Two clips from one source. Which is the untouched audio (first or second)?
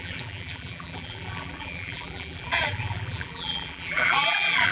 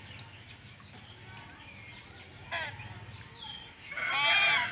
second